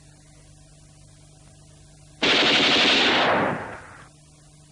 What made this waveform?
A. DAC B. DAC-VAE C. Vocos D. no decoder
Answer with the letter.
D